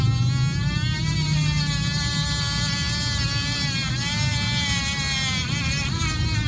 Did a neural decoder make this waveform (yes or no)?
no